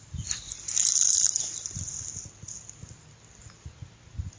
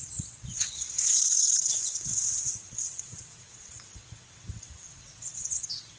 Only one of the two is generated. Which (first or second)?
second